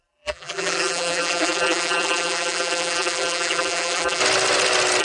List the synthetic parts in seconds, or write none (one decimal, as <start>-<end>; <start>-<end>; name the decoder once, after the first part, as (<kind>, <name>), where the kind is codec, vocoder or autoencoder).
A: 0.0-4.2 (vocoder, BigVGAN v2)